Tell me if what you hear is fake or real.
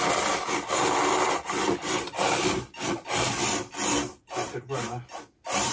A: real